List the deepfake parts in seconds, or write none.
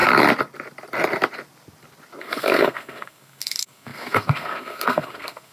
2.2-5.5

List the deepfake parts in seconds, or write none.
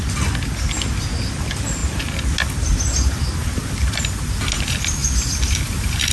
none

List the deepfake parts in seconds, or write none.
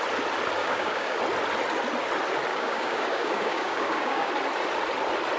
0.6-1.2; 2.5-4.3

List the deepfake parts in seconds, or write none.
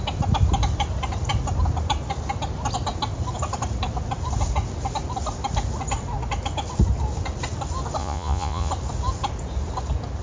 8.0-8.7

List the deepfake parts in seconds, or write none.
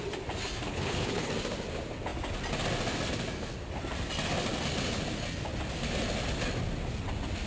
0.7-1.3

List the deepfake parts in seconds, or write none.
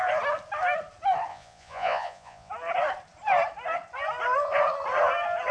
1.3-2.5